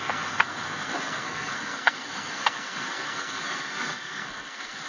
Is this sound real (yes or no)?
no